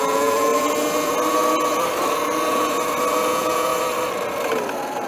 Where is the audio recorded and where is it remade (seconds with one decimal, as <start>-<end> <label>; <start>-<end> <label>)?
0.0-0.5 remade; 0.5-3.3 recorded; 3.3-3.7 remade; 3.7-5.1 recorded